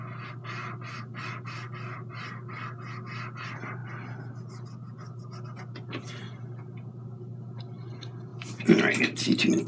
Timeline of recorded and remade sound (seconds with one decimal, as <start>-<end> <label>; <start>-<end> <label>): 0.0-9.7 recorded